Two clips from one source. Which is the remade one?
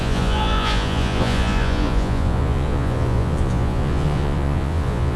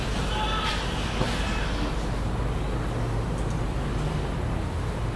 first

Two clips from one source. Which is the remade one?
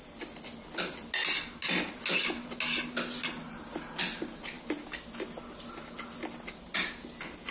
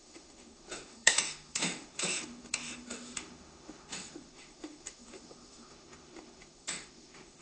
second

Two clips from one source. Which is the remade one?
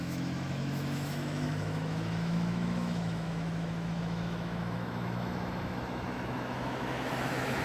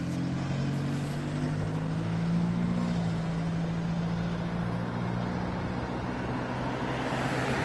first